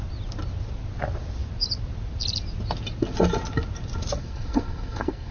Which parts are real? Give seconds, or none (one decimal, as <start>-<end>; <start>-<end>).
0.0-4.2